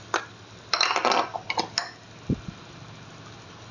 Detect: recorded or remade recorded